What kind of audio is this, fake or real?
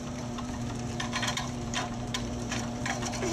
fake